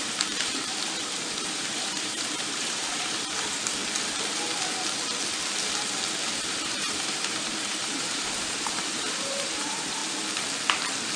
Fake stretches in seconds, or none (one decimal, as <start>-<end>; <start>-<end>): 0.0-3.8; 6.4-10.0